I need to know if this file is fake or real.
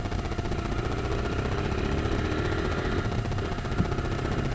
real